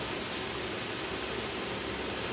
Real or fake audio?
real